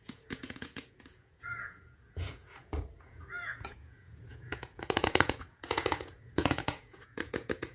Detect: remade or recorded remade